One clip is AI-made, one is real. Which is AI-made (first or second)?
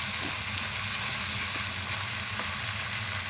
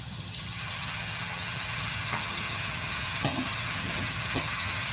second